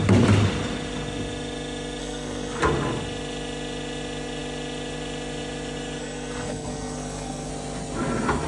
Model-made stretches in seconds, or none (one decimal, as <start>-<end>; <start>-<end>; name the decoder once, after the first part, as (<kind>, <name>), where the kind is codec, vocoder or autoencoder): 2.0-2.6 (codec, SNAC); 6.0-7.5